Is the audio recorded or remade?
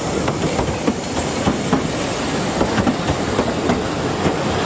recorded